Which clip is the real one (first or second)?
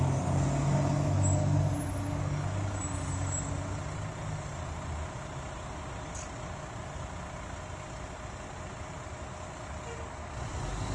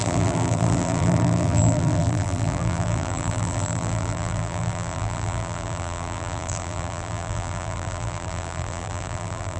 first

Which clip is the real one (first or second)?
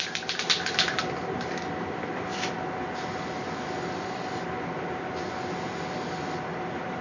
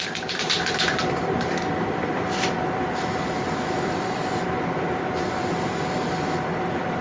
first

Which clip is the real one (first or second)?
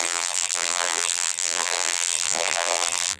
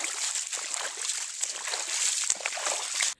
second